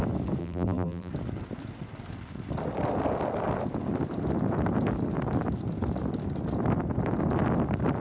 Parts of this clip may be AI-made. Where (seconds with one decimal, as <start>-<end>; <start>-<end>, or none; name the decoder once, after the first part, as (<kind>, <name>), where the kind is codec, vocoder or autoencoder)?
0.4-1.1 (vocoder, BigVGAN v2)